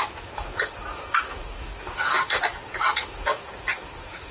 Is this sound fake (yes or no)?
yes